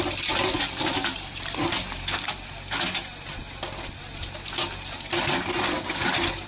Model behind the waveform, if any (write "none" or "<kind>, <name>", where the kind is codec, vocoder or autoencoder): none